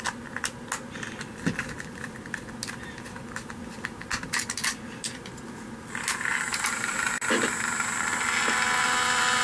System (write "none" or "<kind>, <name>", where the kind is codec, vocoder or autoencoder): none